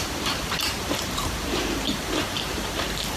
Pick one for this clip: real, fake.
fake